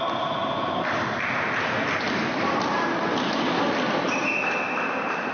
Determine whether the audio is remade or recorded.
recorded